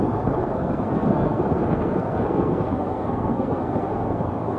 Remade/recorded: remade